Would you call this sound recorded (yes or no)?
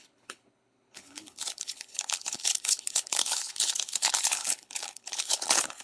no